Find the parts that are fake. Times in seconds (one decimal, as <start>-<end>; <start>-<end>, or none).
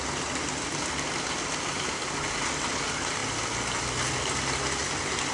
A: none